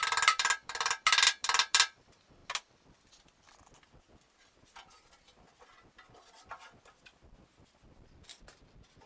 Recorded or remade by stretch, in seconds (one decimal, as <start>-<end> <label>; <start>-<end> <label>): 0.0-9.1 recorded